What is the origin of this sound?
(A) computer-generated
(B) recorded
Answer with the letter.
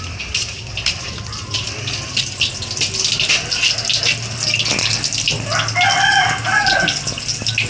B